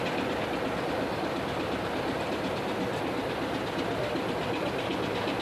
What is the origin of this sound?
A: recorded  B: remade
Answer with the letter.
A